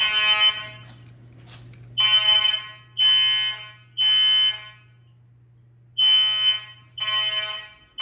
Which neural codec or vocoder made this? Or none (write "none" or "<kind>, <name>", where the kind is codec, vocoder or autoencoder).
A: none